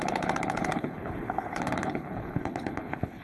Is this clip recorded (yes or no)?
no